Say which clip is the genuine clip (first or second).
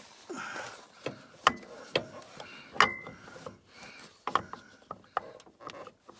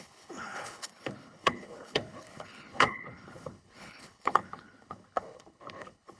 first